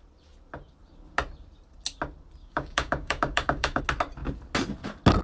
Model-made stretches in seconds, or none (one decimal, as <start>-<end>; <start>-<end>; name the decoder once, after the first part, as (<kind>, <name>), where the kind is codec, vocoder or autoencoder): 2.4-3.8 (codec, DAC)